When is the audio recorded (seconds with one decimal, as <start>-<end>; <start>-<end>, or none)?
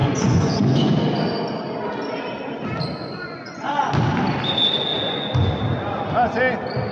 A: 0.9-3.0; 3.9-4.9; 5.5-6.9